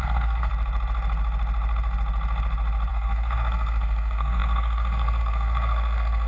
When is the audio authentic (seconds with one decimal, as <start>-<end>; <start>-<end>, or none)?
0.5-2.9